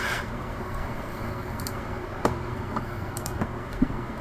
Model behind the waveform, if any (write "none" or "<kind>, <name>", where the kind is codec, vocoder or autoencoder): codec, SNAC